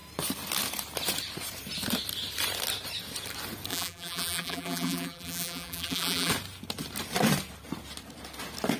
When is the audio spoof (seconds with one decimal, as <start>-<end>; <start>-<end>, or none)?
3.7-6.3

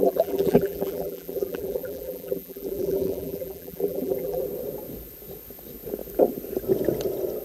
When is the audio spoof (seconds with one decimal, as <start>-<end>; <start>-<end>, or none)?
0.0-4.4

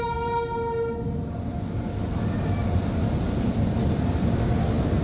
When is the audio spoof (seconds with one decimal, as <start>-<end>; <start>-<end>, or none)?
2.6-4.5

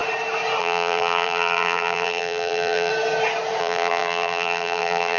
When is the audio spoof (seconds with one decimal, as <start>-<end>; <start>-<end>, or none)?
0.6-2.9; 3.6-5.2

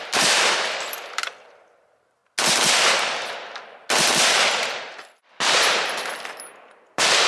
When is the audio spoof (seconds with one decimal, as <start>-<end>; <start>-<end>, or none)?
0.0-2.2; 3.9-7.3

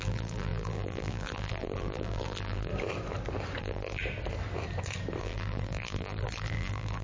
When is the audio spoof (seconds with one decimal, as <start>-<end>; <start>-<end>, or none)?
0.0-2.7; 3.6-4.0; 5.2-7.0